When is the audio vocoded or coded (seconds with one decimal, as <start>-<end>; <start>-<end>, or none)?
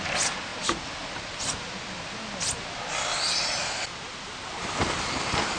none